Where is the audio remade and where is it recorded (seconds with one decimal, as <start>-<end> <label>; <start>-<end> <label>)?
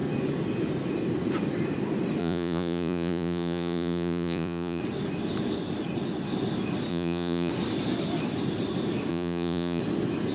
0.0-2.2 recorded; 2.2-4.8 remade; 4.8-6.9 recorded; 6.9-7.5 remade; 7.5-9.1 recorded; 9.1-9.8 remade; 9.8-10.3 recorded